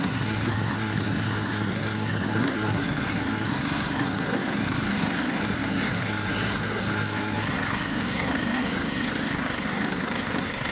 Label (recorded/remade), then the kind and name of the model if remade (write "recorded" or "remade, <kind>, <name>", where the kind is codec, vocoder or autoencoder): remade, codec, SNAC